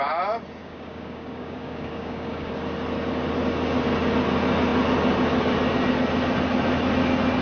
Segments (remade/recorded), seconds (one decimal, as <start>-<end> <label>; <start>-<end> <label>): 0.0-0.6 recorded; 0.6-2.5 remade; 2.5-7.4 recorded